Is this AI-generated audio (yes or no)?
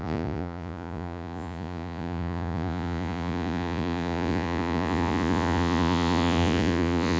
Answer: yes